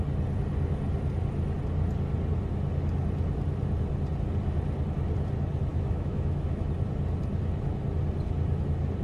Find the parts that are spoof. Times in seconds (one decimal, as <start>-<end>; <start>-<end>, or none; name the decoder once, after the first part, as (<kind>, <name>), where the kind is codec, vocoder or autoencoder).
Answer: 5.7-6.7 (autoencoder, DAC-VAE)